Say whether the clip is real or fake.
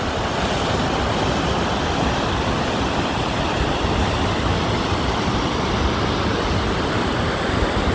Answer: real